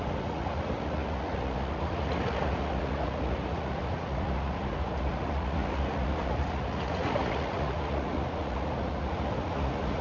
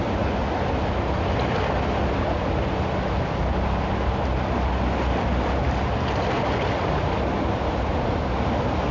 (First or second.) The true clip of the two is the second